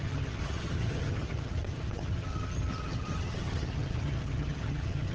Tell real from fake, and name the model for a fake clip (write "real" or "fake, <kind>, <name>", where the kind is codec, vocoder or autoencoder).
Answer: fake, vocoder, HiFi-GAN